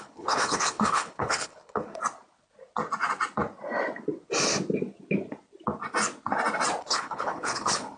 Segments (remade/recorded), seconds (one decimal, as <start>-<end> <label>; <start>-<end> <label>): 0.0-2.0 remade; 2.0-6.8 recorded; 6.8-8.0 remade